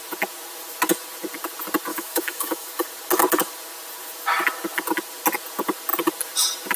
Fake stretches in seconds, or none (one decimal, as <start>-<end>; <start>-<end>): 1.9-2.7

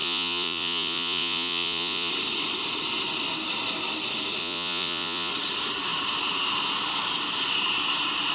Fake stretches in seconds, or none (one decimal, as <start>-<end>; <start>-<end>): 0.0-2.1; 4.4-5.3